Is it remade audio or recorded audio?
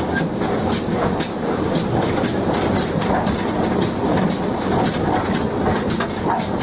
recorded